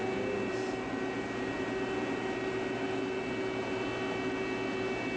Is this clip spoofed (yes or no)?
no